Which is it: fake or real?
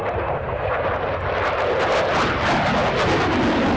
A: real